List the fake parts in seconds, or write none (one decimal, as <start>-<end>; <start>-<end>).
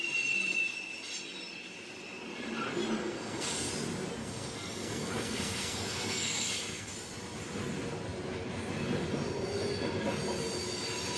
3.0-3.7; 4.2-6.9